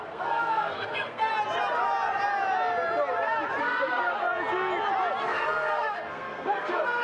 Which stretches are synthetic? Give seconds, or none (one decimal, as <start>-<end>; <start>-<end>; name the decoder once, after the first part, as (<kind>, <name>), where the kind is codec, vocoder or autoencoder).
0.0-1.3 (codec, SNAC); 3.6-4.2; 5.2-7.0